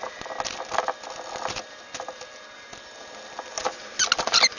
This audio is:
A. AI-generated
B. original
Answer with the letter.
B